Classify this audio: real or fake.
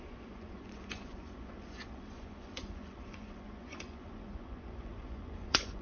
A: fake